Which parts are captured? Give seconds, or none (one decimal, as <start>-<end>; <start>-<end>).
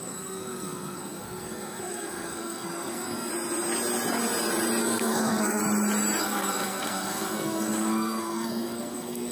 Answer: 3.3-4.8; 5.6-6.2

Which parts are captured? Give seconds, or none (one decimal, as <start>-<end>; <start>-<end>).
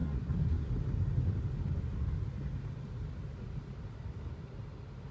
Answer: 0.7-5.1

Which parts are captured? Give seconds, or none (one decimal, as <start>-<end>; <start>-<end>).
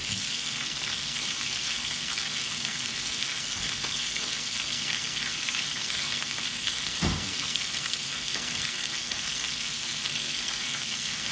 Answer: none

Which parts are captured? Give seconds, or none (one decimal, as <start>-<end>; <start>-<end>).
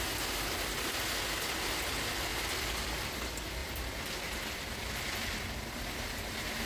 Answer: 0.0-6.7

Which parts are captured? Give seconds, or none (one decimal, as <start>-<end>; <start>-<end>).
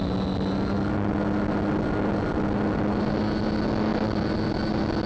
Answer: 0.0-5.1